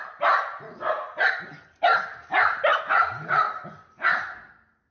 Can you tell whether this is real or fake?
real